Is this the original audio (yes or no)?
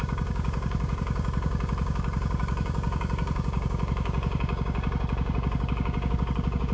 no